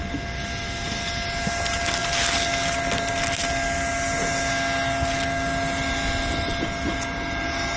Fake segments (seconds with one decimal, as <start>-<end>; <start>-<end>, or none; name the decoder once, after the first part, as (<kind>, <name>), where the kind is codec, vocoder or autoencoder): none